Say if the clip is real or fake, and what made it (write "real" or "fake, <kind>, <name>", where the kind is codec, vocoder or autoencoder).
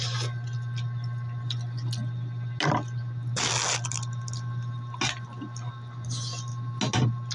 real